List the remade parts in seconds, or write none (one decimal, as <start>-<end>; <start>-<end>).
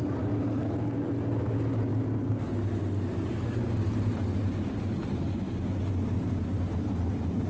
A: none